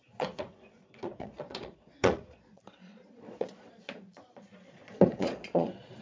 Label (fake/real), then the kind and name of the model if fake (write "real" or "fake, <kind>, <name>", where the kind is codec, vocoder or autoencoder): fake, vocoder, Vocos